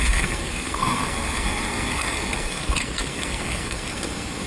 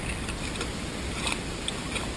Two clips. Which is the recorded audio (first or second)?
second